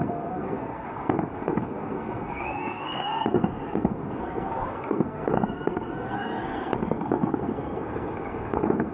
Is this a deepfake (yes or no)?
yes